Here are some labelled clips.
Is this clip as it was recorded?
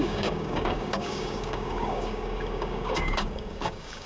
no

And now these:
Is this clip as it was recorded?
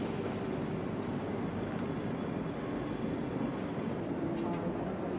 yes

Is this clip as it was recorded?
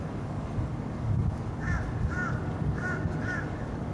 no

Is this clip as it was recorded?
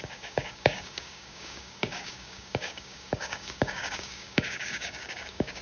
no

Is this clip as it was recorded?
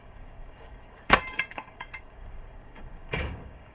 no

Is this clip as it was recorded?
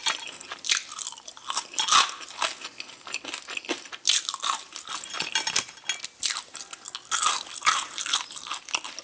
yes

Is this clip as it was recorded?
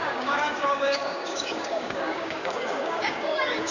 no